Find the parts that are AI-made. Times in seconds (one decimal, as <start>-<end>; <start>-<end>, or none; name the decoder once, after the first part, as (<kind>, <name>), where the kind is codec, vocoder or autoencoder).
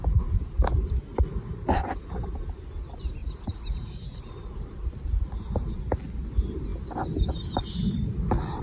none